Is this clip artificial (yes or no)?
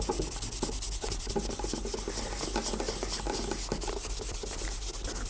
no